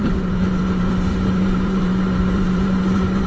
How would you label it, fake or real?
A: fake